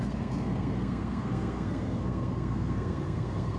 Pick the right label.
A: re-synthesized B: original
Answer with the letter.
A